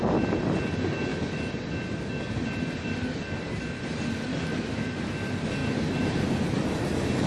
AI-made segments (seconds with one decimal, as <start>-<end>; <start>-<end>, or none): 4.3-5.0